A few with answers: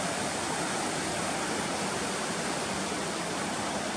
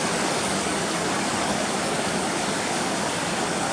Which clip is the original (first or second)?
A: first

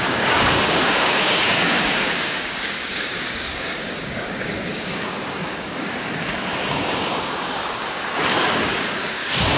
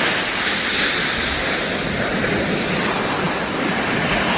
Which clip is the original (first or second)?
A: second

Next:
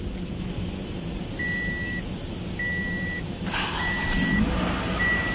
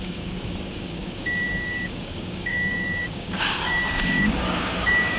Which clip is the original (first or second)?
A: first